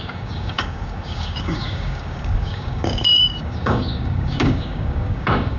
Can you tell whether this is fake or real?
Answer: fake